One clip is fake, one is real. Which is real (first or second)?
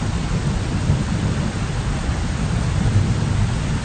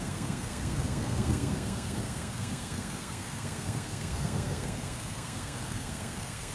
first